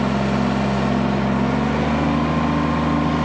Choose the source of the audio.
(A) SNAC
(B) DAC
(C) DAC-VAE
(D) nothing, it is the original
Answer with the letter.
D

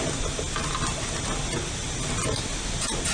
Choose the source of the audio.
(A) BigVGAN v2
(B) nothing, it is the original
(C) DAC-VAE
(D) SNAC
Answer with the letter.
B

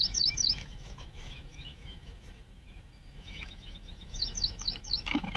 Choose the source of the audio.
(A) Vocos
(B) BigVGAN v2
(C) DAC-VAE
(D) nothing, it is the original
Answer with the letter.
C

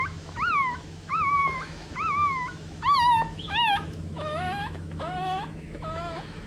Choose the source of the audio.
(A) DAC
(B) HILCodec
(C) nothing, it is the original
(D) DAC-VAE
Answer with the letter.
D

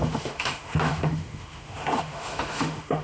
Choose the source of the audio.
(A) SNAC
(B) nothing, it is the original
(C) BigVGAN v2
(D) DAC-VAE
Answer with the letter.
D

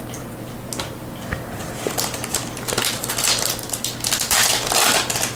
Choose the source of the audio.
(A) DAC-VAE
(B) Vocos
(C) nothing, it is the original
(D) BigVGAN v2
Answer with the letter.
C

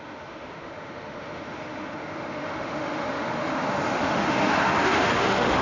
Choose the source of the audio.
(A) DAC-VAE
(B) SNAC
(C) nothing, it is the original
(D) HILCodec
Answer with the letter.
A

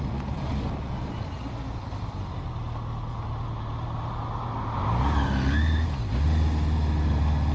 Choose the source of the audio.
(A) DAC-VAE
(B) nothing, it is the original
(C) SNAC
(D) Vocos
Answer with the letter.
B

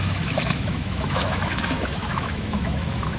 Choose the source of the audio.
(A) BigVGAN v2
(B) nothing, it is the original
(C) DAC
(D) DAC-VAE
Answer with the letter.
D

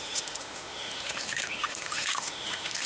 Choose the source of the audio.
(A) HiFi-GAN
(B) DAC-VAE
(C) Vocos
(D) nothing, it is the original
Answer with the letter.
B